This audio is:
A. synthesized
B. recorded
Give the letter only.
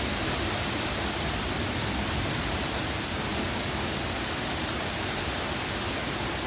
B